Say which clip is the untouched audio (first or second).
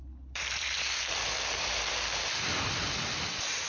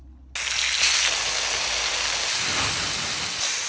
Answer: second